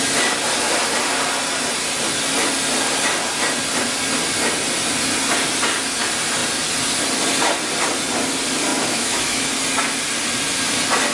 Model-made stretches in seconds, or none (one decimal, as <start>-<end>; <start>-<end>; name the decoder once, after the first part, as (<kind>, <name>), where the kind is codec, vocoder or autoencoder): 8.7-9.5 (autoencoder, DAC-VAE)